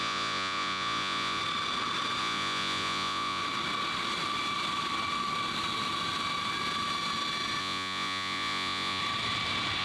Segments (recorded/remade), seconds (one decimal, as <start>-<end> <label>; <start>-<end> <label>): 0.0-1.4 remade; 1.4-2.2 recorded; 2.2-3.4 remade; 3.4-7.6 recorded; 7.6-9.0 remade; 9.0-9.8 recorded